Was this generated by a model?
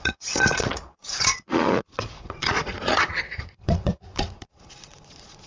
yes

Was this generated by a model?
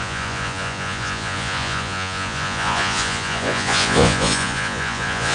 yes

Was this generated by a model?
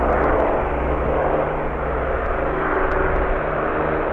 no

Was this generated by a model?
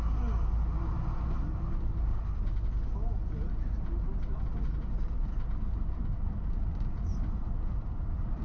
no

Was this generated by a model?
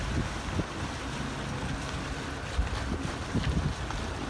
no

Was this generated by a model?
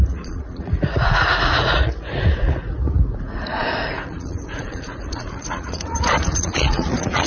yes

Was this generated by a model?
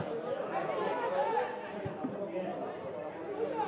no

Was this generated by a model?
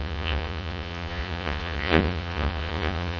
yes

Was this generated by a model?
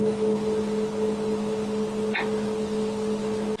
no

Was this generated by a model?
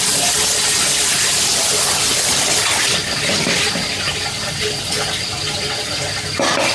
no